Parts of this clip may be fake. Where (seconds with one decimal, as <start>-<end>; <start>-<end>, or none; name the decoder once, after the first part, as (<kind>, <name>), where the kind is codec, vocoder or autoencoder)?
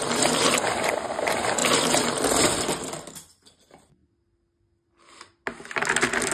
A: none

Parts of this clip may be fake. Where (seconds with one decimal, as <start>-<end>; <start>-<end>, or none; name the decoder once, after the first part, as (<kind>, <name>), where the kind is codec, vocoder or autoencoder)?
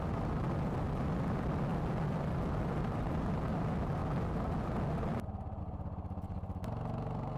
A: none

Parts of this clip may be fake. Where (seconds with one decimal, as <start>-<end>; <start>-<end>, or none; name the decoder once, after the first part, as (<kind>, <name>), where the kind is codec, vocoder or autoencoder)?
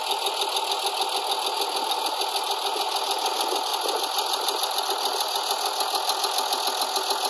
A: none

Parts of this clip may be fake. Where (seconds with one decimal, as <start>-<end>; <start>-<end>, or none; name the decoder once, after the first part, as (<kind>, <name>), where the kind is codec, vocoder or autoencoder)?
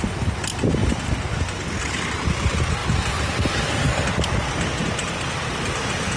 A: 2.8-3.5 (vocoder, BigVGAN v2)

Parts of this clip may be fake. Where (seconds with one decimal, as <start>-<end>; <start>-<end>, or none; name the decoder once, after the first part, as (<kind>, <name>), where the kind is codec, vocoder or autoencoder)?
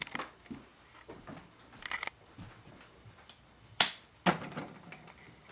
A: none